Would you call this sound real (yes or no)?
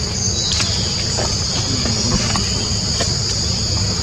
yes